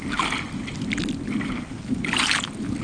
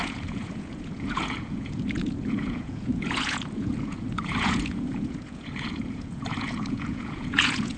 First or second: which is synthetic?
second